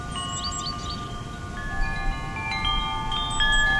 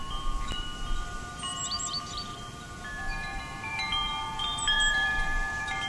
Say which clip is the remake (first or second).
second